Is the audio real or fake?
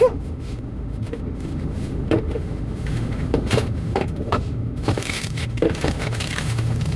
fake